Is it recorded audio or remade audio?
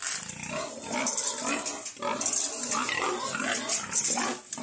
recorded